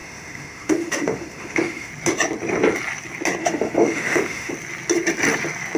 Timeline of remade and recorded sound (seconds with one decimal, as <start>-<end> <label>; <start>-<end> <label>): 0.0-1.9 remade; 1.9-3.4 recorded; 3.4-4.5 remade; 4.5-5.8 recorded